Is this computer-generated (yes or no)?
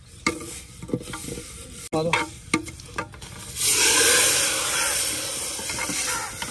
no